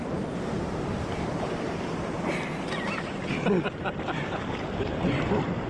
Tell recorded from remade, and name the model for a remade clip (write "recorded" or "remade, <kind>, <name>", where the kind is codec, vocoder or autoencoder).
remade, vocoder, BigVGAN v2